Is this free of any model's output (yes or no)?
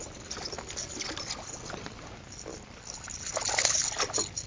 yes